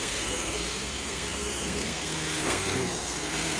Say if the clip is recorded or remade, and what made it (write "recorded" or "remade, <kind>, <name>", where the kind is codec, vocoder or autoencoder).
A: remade, codec, SNAC